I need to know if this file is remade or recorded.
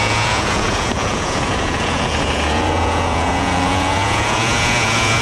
remade